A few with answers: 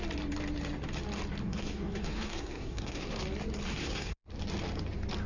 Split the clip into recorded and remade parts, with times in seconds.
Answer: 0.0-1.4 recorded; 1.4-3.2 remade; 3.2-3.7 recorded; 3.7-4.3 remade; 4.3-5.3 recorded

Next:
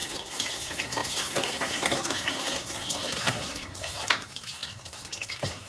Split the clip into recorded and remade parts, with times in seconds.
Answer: 0.0-5.7 remade

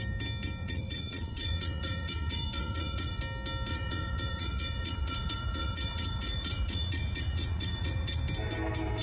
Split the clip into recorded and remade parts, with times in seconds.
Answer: 0.0-0.6 recorded; 0.6-3.2 remade; 3.2-3.7 recorded; 3.7-8.2 remade; 8.2-9.0 recorded

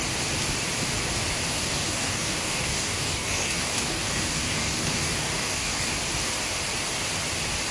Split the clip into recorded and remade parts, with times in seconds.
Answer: 0.0-1.5 recorded; 1.5-5.9 remade; 5.9-7.7 recorded

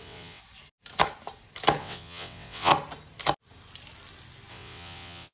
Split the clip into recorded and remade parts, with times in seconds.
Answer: 0.0-0.4 remade; 0.4-1.8 recorded; 1.8-2.7 remade; 2.7-4.5 recorded; 4.5-5.3 remade

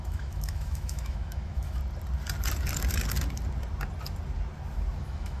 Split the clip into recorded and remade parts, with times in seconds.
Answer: 0.0-1.8 remade; 1.8-5.0 recorded; 5.0-5.4 remade

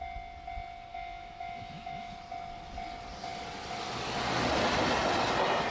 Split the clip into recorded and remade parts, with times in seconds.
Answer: 0.0-0.9 recorded; 0.9-2.1 remade; 2.1-5.7 recorded

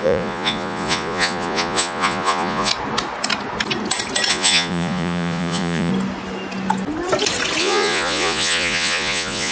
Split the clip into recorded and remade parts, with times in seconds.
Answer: 0.0-2.7 remade; 2.7-4.3 recorded; 4.3-5.9 remade; 5.9-7.6 recorded; 7.6-9.5 remade